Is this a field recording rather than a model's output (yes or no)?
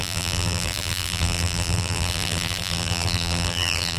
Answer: no